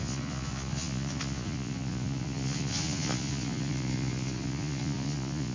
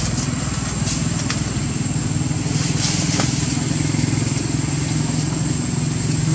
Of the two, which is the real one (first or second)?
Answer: second